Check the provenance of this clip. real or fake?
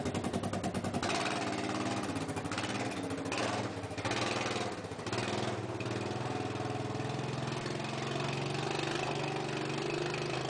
real